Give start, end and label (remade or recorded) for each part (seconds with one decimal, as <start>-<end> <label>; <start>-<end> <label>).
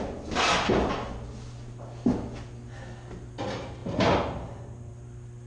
0.0-5.5 recorded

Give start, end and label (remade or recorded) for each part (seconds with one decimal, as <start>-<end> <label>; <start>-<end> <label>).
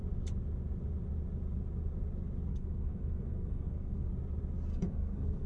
0.0-2.5 recorded; 2.5-4.1 remade; 4.1-4.7 recorded; 4.7-5.5 remade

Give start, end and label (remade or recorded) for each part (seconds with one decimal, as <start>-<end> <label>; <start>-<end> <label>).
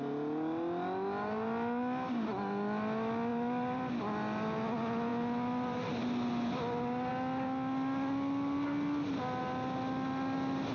0.0-3.3 recorded; 3.3-3.9 remade; 3.9-5.1 recorded; 5.1-5.9 remade; 5.9-10.7 recorded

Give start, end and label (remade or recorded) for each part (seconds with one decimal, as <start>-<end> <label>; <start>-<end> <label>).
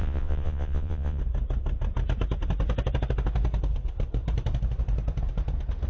0.0-1.2 remade; 1.2-5.9 recorded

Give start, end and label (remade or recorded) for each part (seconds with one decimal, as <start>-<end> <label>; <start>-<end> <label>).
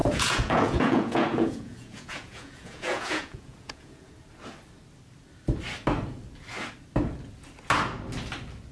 0.0-4.1 remade; 4.1-8.7 recorded